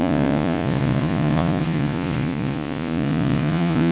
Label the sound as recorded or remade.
remade